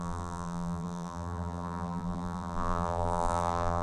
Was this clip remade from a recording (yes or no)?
yes